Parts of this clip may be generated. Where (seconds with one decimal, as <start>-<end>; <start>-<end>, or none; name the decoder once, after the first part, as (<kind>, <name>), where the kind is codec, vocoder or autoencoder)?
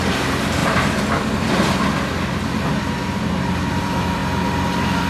0.0-4.2 (vocoder, BigVGAN v2)